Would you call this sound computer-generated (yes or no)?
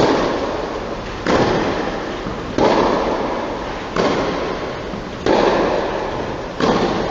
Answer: no